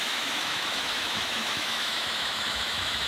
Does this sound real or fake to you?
fake